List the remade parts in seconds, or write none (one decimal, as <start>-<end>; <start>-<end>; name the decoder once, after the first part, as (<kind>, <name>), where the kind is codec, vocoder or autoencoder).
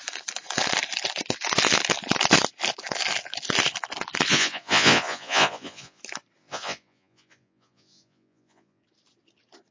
4.3-6.0 (vocoder, Vocos); 6.4-8.8